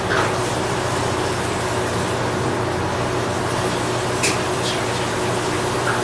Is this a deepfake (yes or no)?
no